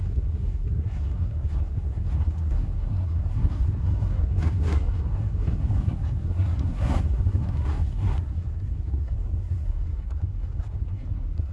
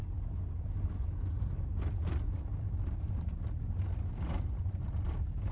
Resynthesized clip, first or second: first